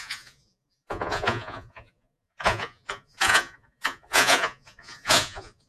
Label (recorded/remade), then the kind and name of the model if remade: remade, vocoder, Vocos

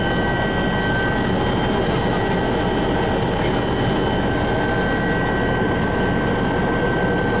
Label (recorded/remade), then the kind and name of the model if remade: recorded